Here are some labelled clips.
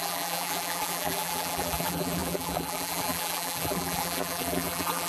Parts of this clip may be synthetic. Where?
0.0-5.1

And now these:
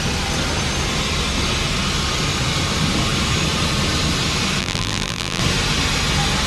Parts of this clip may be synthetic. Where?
4.6-5.4

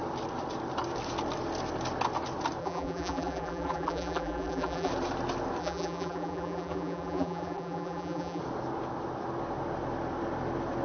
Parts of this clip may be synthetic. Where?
2.6-4.9; 5.6-8.4

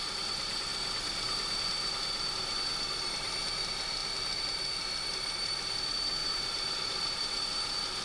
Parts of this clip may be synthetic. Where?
6.2-7.3

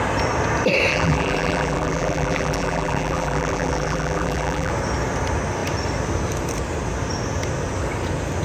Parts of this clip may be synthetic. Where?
0.9-4.7

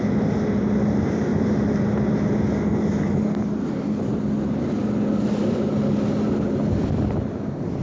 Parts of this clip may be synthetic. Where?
none

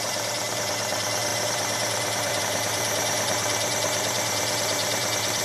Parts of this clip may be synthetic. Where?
0.0-5.4